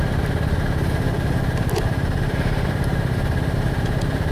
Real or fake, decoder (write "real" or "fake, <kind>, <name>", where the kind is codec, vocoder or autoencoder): real